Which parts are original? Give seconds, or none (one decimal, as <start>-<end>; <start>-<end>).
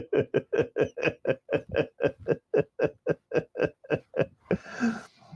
0.0-5.4